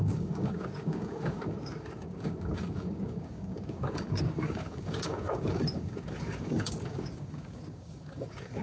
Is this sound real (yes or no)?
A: no